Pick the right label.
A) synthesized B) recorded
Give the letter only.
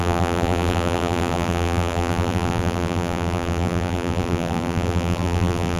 A